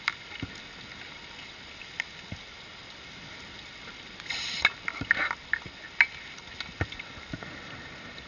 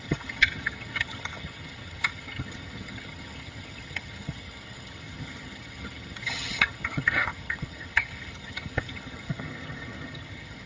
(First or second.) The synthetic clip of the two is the second